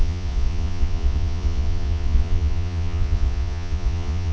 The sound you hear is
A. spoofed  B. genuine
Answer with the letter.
A